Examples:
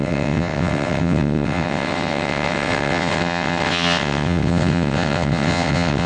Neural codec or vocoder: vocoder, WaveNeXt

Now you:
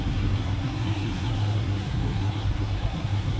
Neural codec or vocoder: codec, SNAC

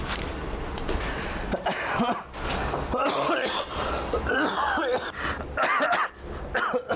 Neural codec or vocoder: none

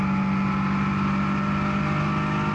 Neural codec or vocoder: none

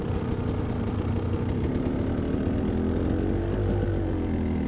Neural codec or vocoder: none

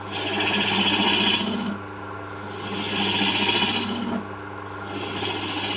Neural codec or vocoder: none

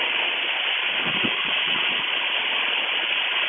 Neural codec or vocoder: none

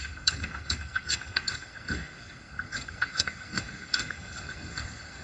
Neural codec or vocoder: codec, SNAC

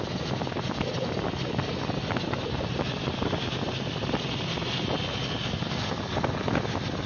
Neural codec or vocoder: none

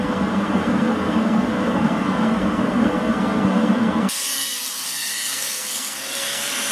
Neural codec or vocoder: codec, SNAC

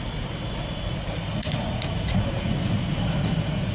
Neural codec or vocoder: vocoder, Vocos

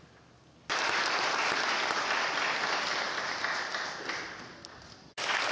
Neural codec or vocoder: none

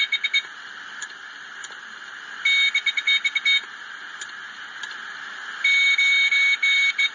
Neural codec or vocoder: none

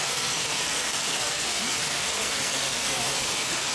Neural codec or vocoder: codec, SNAC